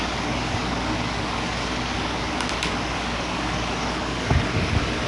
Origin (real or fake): fake